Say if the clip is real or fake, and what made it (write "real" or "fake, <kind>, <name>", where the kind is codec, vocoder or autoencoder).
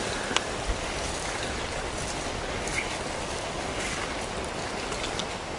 real